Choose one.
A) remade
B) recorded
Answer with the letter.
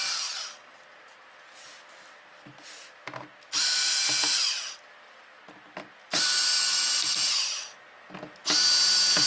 B